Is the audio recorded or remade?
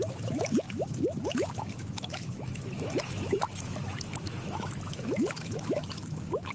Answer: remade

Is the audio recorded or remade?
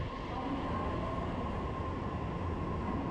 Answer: recorded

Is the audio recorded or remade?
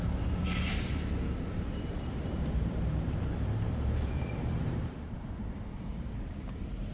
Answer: remade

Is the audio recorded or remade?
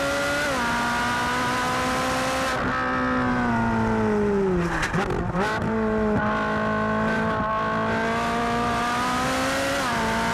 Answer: recorded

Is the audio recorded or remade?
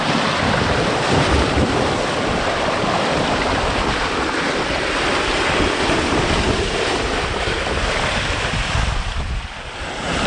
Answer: remade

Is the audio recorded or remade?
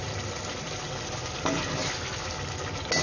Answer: recorded